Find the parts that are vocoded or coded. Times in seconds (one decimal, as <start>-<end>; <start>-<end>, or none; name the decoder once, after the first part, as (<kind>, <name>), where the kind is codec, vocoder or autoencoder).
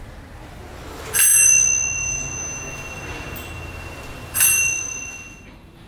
none